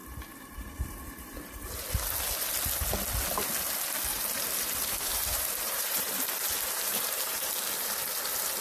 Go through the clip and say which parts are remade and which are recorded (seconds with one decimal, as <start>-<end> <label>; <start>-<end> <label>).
0.0-4.1 recorded; 4.1-7.5 remade; 7.5-8.6 recorded